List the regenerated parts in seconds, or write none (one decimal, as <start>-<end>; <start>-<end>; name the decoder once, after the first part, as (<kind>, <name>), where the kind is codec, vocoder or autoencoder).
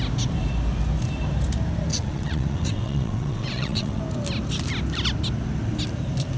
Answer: 1.9-4.0 (vocoder, WaveNeXt)